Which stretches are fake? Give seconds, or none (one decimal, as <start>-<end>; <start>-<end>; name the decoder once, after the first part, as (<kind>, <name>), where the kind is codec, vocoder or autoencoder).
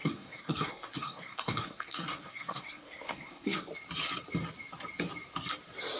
0.0-3.7 (codec, SNAC)